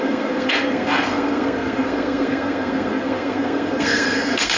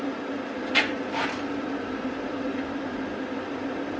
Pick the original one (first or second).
second